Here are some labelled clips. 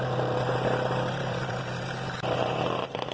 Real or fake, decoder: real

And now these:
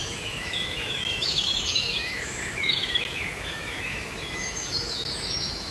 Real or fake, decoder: fake, autoencoder, DAC-VAE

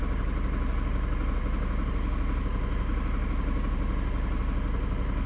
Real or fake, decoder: real